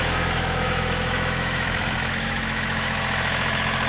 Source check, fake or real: fake